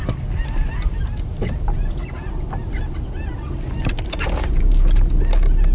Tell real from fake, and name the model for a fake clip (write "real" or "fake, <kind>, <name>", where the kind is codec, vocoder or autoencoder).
real